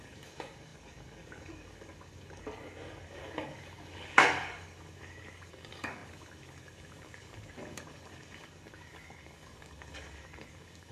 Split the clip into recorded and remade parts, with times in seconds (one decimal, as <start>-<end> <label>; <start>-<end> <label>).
0.0-10.9 remade